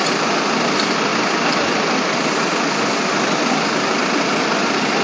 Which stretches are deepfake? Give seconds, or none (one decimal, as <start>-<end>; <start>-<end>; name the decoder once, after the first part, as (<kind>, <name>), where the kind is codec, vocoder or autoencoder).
1.1-2.5 (vocoder, BigVGAN v2)